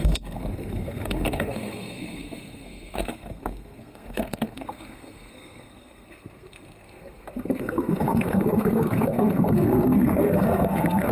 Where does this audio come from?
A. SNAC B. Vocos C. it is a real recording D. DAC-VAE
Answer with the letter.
A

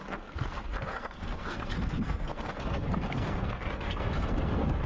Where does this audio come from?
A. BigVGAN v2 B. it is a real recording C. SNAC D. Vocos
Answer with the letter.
C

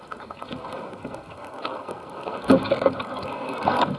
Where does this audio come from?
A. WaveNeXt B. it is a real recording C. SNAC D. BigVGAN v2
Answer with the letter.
C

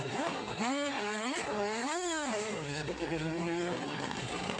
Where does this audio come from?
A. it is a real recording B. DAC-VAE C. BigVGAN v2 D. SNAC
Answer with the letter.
D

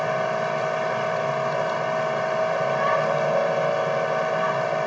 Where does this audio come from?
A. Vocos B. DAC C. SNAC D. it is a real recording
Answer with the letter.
D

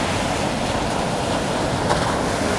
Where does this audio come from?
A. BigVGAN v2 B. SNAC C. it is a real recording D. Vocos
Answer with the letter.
C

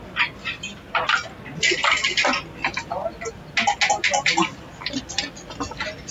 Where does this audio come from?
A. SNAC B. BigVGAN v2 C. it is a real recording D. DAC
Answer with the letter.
C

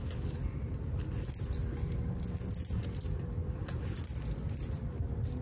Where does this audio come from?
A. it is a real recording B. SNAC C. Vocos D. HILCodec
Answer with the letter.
A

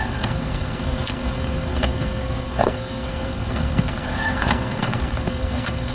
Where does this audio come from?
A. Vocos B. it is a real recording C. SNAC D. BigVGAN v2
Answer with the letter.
C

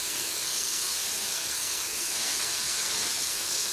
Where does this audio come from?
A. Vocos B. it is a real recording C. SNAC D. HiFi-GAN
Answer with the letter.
C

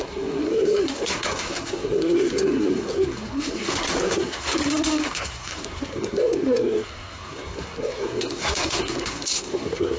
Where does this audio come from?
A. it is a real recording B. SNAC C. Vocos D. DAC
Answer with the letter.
B